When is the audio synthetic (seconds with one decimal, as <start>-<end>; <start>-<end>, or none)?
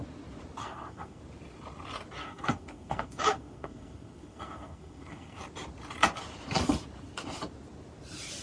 0.6-1.2; 2.2-5.4